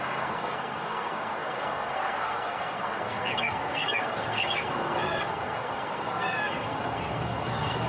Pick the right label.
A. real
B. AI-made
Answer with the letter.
B